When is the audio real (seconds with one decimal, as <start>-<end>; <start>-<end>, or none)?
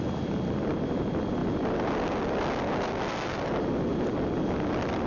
0.0-5.1